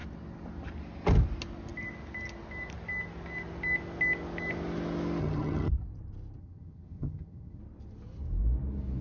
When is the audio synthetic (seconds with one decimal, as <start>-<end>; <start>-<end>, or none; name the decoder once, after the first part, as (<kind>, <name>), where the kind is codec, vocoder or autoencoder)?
5.2-5.7 (vocoder, HiFi-GAN); 6.4-7.6